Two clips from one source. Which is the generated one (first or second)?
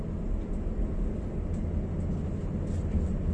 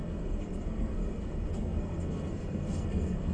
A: second